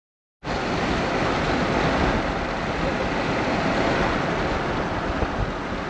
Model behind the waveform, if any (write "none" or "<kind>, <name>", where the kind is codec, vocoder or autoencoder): none